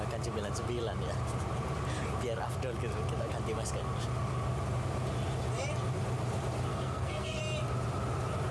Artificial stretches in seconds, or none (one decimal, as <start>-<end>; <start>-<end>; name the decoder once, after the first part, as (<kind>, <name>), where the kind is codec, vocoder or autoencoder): 6.7-7.4 (codec, SNAC)

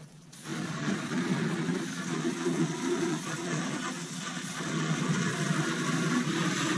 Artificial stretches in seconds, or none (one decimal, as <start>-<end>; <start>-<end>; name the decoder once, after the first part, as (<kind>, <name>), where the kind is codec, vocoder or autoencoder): 0.0-5.3 (vocoder, Vocos)

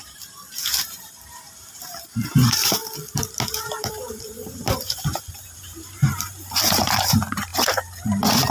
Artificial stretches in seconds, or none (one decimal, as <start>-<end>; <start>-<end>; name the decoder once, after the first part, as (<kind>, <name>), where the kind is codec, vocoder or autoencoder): 0.0-2.8 (vocoder, BigVGAN v2); 3.8-8.5